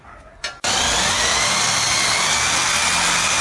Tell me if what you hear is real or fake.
real